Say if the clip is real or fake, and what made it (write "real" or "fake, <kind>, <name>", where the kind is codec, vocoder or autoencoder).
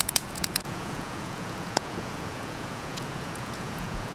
fake, vocoder, Vocos